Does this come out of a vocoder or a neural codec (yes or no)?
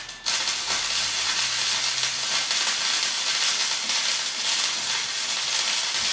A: no